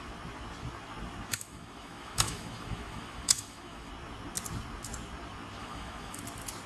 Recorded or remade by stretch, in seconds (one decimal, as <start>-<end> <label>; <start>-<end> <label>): 0.0-1.3 recorded; 1.3-3.9 remade; 3.9-5.6 recorded; 5.6-6.2 remade; 6.2-6.7 recorded